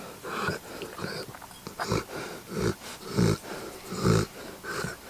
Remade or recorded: recorded